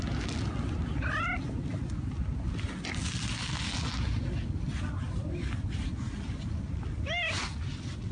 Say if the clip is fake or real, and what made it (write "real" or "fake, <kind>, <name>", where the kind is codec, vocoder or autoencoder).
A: real